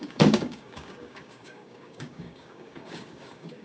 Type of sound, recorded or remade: remade